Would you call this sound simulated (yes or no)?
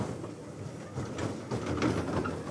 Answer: no